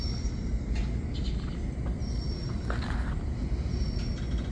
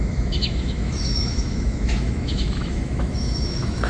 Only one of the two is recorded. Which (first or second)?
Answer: first